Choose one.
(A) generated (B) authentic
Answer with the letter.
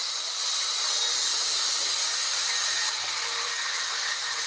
A